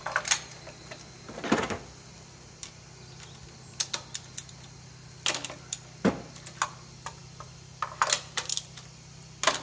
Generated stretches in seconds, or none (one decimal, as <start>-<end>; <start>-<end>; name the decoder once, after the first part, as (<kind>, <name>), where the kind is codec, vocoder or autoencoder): none